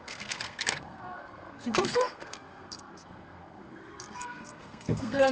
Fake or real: fake